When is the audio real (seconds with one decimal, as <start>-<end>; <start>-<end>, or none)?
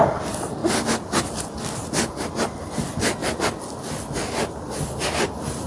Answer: 0.0-5.7